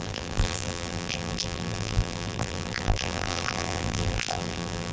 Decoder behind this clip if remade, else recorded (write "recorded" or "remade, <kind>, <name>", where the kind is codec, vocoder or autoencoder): remade, vocoder, BigVGAN v2